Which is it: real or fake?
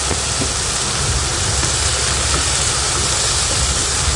real